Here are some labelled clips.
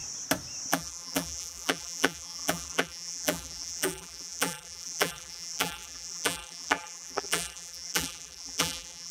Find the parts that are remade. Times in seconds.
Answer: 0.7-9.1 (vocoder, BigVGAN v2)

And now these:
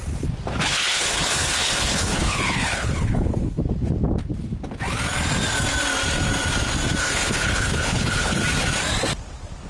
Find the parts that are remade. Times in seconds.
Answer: 0.6-3.6 (codec, HILCodec); 7.0-8.4

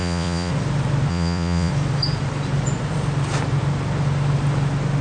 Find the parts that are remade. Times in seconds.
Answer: 0.0-0.5 (vocoder, Vocos); 1.1-1.7

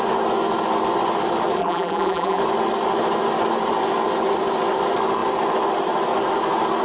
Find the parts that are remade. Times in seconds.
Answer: 1.6-2.4 (vocoder, BigVGAN v2)

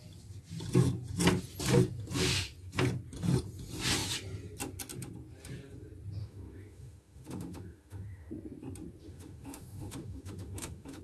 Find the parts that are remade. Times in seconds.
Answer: 6.2-8.3 (autoencoder, DAC-VAE); 9.0-11.0

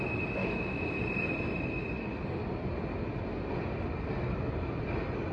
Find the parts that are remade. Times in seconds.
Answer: 0.4-1.0 (autoencoder, DAC-VAE)

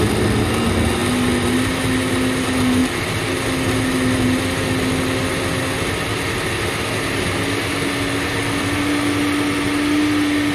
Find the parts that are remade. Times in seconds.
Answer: none

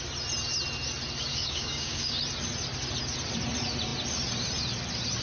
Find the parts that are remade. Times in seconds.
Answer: 1.3-2.1 (codec, DAC)